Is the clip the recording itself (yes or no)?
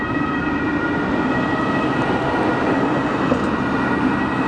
yes